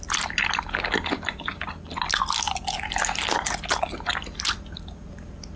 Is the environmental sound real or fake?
real